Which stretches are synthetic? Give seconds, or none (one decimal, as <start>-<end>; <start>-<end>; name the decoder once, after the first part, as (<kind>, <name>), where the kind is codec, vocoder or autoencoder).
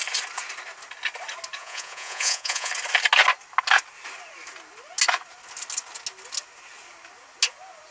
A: 1.6-2.7 (vocoder, Vocos)